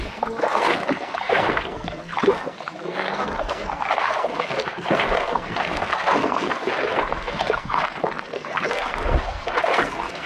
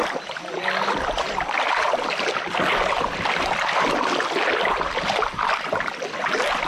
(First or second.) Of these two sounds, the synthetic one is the first